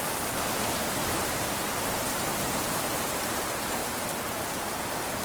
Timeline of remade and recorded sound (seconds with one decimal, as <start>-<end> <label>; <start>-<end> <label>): 0.0-1.0 recorded; 1.0-3.4 remade; 3.4-3.8 recorded; 3.8-4.5 remade; 4.5-5.2 recorded

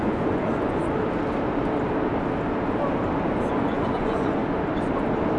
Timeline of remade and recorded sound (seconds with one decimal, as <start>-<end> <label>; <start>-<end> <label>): 0.0-0.8 remade; 0.8-3.5 recorded; 3.5-4.4 remade; 4.4-5.4 recorded

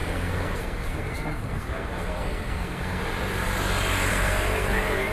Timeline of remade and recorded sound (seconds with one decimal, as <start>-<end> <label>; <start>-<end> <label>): 0.0-3.0 remade; 3.0-4.1 recorded; 4.1-5.1 remade

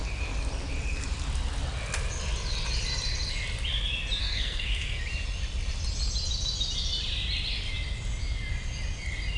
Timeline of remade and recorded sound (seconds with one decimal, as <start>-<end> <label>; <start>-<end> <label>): 0.0-4.2 recorded; 4.2-5.0 remade; 5.0-9.4 recorded

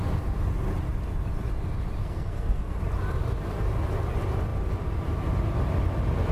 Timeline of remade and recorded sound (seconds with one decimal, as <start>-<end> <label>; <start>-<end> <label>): 0.0-2.0 recorded; 2.0-2.8 remade; 2.8-6.3 recorded

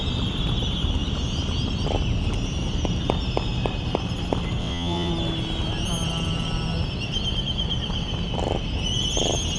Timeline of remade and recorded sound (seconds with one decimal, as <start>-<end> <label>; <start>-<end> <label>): 0.0-4.6 recorded; 4.6-5.1 remade; 5.1-9.6 recorded